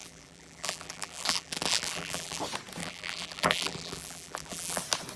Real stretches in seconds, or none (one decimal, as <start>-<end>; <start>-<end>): 2.4-2.8; 4.8-5.2